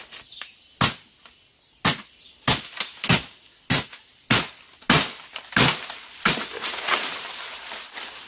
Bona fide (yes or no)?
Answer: yes